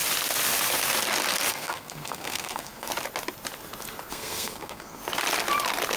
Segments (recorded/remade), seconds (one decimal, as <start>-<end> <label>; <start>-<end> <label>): 0.0-1.5 recorded; 1.5-2.9 remade; 2.9-4.1 recorded; 4.1-5.0 remade; 5.0-6.0 recorded